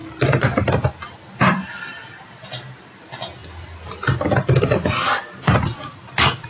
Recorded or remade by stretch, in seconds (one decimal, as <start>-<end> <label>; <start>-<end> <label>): 0.0-6.5 recorded